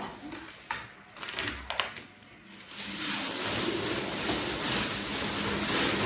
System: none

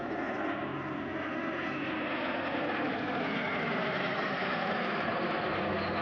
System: none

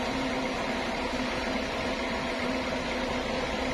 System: none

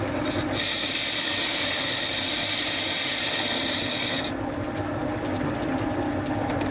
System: vocoder, BigVGAN v2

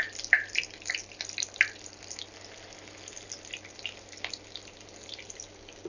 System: none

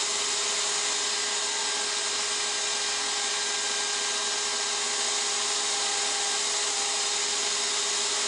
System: none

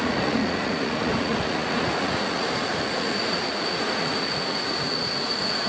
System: vocoder, Vocos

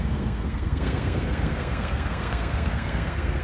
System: codec, SNAC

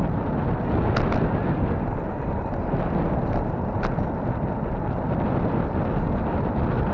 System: none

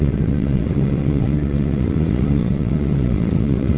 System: vocoder, WaveNeXt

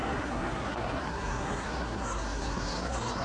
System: codec, SNAC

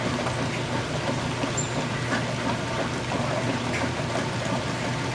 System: none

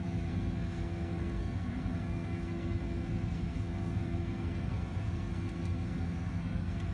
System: codec, SNAC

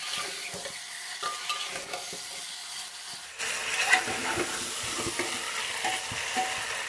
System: none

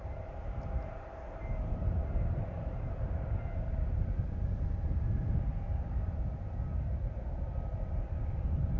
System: vocoder, BigVGAN v2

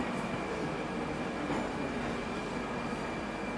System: none